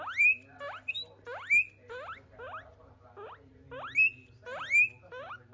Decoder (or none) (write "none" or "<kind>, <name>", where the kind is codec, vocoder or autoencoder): none